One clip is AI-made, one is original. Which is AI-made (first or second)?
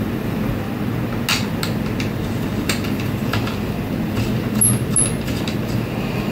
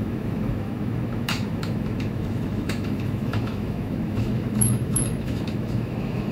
second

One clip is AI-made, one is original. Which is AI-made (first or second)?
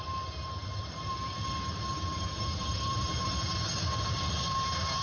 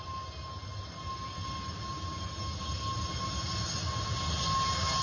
first